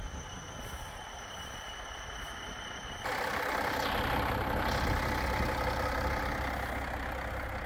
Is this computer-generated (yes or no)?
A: no